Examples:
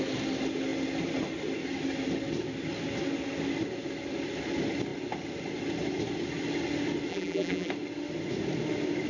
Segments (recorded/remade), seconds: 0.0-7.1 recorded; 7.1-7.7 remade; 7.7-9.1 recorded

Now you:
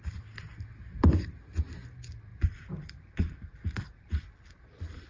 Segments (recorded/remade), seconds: 0.0-0.9 recorded; 0.9-1.4 remade; 1.4-2.3 recorded; 2.3-4.2 remade; 4.2-5.1 recorded

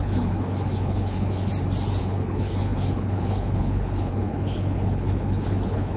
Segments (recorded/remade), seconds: 0.0-1.5 remade; 1.5-2.0 recorded; 2.0-6.0 remade

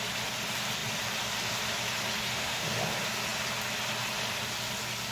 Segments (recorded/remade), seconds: 0.0-2.3 recorded; 2.3-2.8 remade; 2.8-5.1 recorded

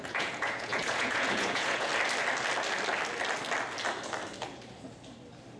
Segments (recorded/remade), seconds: 0.0-1.9 remade; 1.9-5.6 recorded

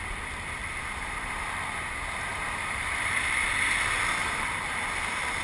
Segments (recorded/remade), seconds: 0.0-0.6 recorded; 0.6-1.9 remade; 1.9-2.3 recorded; 2.3-3.5 remade; 3.5-4.2 recorded; 4.2-4.9 remade; 4.9-5.4 recorded